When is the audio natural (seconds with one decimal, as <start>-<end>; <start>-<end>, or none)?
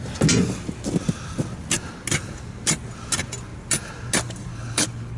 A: 0.0-4.5